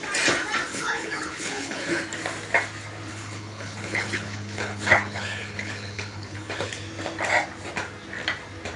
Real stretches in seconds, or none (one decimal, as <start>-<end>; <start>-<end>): 0.0-0.7; 2.0-3.1; 6.7-8.8